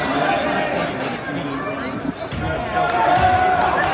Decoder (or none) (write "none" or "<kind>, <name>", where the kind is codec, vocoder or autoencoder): none